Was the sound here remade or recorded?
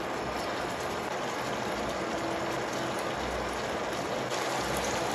recorded